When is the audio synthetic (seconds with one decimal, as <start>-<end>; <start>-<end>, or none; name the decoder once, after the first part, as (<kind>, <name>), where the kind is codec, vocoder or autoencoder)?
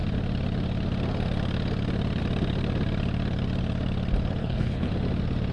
4.4-4.9 (codec, HILCodec)